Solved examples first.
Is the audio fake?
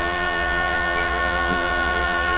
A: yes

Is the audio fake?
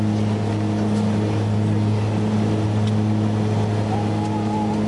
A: no